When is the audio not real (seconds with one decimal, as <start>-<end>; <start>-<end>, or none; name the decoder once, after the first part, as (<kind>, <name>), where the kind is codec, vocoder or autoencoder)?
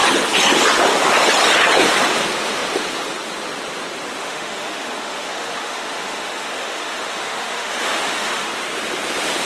4.2-8.5 (autoencoder, DAC-VAE)